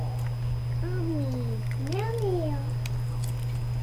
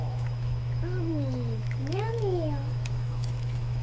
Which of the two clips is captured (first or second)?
first